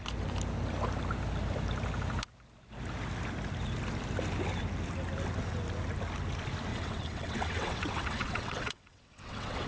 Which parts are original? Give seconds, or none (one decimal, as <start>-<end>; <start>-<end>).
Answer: 0.0-6.7